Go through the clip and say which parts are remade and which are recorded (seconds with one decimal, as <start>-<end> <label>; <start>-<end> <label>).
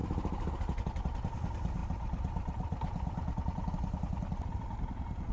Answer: 0.0-0.5 remade; 0.5-1.8 recorded; 1.8-3.7 remade; 3.7-5.3 recorded